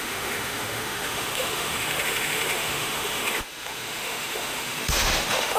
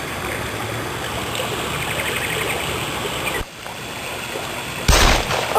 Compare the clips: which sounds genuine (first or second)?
second